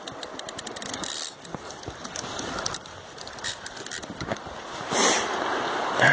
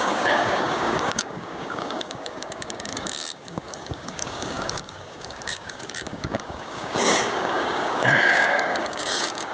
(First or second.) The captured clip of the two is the first